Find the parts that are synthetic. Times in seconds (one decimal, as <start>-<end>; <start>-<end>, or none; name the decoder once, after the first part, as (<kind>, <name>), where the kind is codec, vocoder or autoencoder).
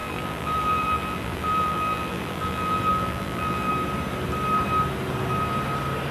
0.0-3.7 (vocoder, BigVGAN v2)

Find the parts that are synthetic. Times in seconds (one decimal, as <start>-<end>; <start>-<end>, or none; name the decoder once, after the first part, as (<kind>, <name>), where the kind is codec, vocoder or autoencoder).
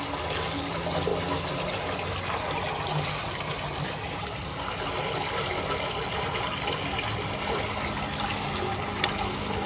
none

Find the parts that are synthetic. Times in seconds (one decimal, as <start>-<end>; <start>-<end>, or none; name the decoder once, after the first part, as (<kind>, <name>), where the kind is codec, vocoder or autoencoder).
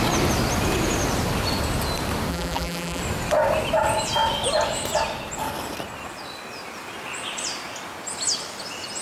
2.3-3.0 (vocoder, BigVGAN v2)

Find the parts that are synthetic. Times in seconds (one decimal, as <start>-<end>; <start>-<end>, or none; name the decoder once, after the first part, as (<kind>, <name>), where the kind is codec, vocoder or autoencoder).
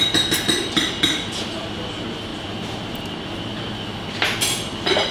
0.0-2.3 (vocoder, BigVGAN v2); 4.1-5.1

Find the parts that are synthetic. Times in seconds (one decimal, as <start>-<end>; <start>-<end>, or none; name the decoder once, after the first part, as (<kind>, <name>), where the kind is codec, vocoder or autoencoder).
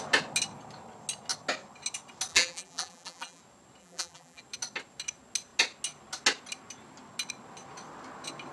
2.3-3.4 (vocoder, BigVGAN v2); 3.8-4.4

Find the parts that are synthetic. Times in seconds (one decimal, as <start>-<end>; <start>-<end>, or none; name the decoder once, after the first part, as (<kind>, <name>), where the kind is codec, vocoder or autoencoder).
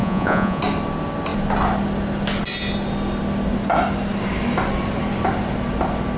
0.0-0.6 (vocoder, Vocos)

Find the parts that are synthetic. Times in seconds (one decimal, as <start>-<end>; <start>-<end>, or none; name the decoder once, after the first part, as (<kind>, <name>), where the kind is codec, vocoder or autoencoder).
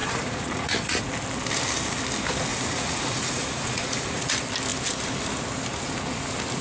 0.0-1.0 (vocoder, Vocos); 2.5-4.3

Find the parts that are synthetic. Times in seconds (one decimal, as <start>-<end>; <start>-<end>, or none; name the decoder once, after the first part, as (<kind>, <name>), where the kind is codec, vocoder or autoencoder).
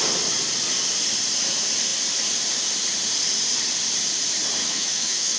4.6-5.4 (autoencoder, DAC-VAE)